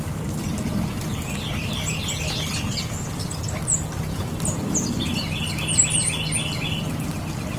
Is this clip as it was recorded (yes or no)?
yes